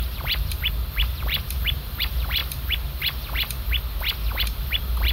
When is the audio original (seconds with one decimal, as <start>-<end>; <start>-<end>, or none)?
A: 2.4-4.4